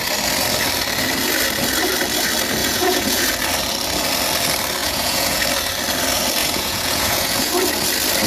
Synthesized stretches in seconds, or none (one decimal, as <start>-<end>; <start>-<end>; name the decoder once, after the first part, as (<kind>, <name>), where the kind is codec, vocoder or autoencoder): 2.6-3.3 (vocoder, Vocos); 4.8-5.4; 6.4-7.5